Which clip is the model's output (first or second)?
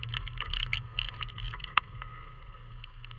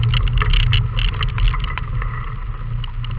first